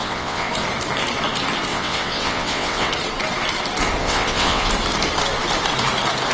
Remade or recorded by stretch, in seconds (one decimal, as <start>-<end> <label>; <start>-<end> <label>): 0.0-0.5 remade; 0.5-1.7 recorded; 1.7-2.9 remade; 2.9-4.0 recorded; 4.0-4.7 remade; 4.7-6.3 recorded